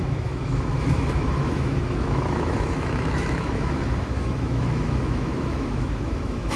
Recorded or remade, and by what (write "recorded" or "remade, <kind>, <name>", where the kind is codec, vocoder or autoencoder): remade, autoencoder, DAC-VAE